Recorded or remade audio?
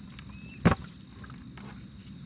recorded